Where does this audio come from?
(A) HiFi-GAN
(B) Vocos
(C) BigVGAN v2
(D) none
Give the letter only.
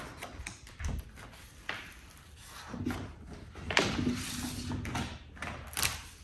D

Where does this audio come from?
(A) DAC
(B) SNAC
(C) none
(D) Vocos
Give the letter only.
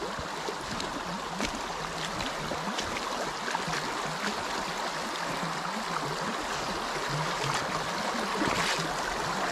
C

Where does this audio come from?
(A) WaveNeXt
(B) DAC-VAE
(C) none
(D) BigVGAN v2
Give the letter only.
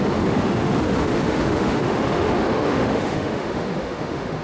B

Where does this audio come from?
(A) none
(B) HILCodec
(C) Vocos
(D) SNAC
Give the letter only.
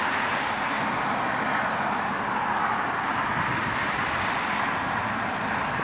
A